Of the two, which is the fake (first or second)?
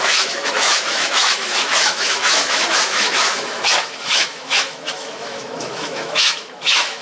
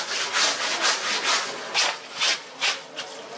first